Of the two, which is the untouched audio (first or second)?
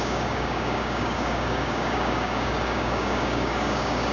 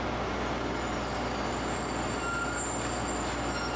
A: second